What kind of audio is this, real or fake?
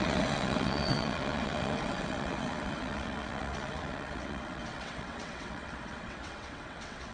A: fake